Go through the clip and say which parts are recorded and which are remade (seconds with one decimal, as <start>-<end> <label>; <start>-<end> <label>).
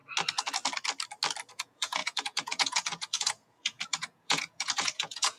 0.0-1.5 recorded; 1.5-5.4 remade